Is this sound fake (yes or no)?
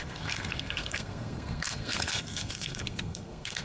yes